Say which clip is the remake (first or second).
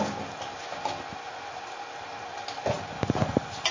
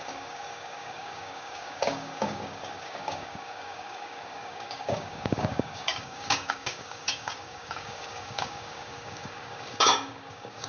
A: second